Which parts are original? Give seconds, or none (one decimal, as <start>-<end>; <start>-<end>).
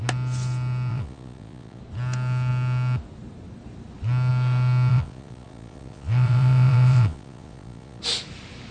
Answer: 0.0-0.9; 1.8-4.9; 8.0-8.7